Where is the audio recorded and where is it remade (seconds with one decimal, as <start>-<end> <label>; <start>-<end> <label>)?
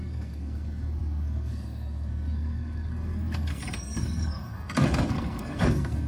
0.0-6.1 remade